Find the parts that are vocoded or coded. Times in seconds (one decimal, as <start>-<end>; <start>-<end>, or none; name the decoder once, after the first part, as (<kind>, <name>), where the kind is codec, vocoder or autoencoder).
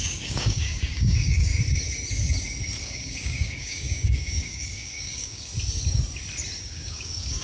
0.0-1.5 (codec, DAC); 2.8-5.5; 6.6-7.4